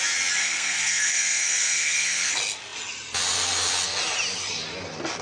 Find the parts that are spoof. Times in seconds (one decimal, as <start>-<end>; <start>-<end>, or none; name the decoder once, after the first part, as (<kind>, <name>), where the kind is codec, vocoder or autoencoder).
0.4-2.3 (codec, SNAC)